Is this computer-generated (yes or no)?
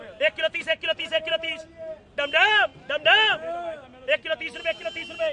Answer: no